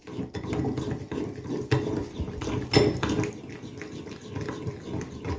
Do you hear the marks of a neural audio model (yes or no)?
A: no